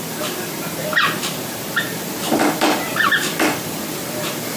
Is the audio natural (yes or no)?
no